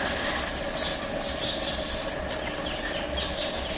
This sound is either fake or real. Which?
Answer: real